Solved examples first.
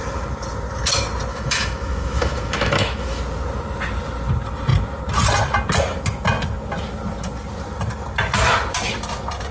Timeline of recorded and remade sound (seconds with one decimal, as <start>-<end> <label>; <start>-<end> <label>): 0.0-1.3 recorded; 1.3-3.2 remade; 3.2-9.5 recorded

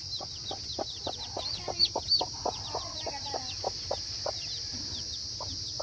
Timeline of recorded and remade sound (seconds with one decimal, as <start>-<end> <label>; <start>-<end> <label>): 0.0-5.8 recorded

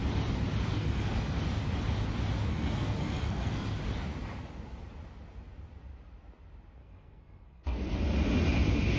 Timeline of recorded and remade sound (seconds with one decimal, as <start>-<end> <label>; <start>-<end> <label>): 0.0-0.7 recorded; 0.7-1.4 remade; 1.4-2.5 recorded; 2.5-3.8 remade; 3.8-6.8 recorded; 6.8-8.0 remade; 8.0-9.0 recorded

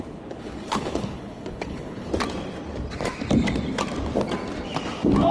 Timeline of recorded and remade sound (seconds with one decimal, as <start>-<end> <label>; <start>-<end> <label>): 0.0-2.1 remade; 2.1-5.3 recorded